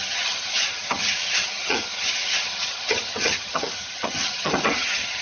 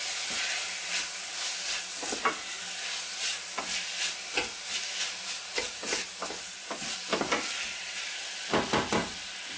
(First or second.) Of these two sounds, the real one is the second